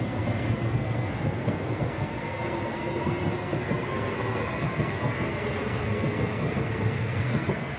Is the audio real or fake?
fake